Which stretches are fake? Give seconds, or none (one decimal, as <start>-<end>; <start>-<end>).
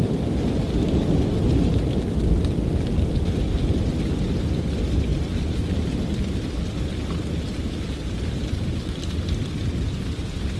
none